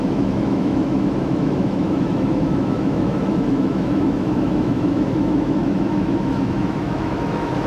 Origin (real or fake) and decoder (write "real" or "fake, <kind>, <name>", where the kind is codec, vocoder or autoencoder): fake, autoencoder, DAC-VAE